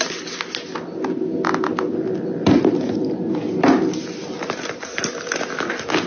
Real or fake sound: real